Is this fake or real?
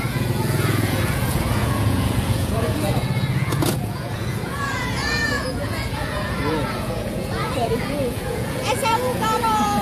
fake